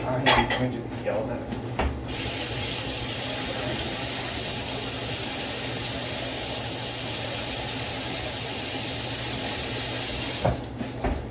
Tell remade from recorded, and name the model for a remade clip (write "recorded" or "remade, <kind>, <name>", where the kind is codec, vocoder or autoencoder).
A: recorded